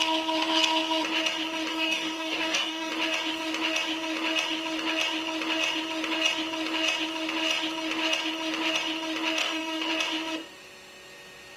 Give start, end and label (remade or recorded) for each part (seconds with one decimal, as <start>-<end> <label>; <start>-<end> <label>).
0.0-1.7 recorded; 1.7-2.9 remade; 2.9-9.4 recorded; 9.4-9.9 remade; 9.9-11.6 recorded